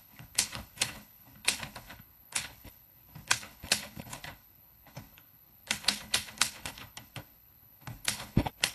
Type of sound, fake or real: fake